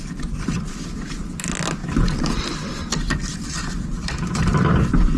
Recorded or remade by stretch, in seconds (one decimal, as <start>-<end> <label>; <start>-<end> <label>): 0.0-5.2 recorded